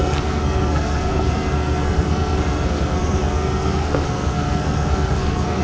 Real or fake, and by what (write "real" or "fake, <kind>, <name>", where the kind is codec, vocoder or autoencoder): fake, codec, SNAC